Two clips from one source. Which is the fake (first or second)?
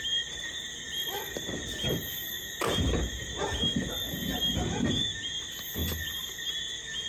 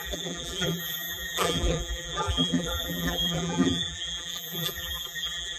second